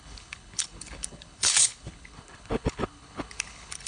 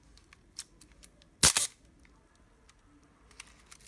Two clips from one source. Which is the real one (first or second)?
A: second